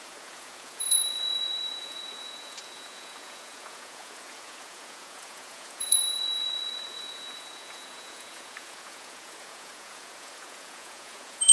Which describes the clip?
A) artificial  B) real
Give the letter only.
A